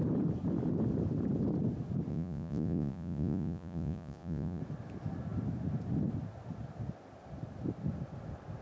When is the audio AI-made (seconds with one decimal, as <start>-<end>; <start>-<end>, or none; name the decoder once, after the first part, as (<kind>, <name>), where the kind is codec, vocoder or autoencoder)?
2.1-4.6 (vocoder, Vocos)